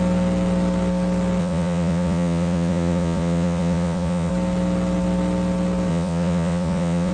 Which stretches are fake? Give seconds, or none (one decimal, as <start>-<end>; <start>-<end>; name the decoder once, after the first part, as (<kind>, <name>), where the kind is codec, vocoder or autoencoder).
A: 1.4-4.3 (vocoder, Vocos); 5.9-7.1